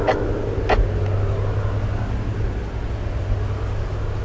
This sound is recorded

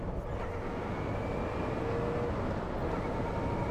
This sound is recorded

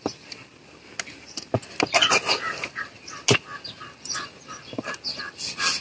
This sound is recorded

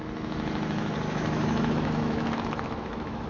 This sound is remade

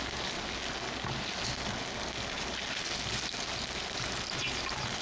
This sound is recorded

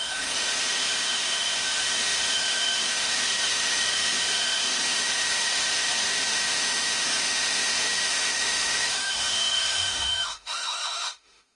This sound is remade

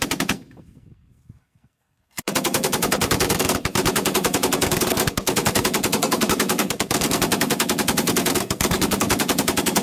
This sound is remade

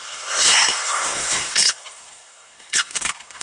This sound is remade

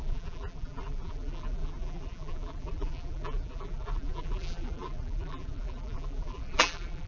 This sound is remade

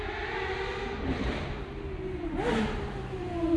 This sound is recorded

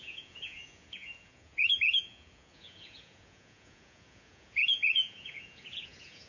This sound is remade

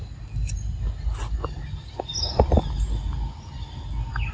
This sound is recorded